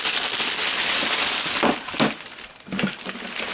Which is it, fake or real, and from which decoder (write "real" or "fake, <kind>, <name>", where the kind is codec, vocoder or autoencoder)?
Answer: real